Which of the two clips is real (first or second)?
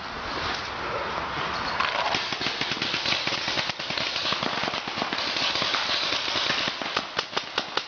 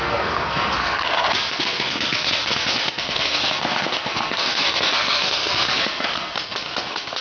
first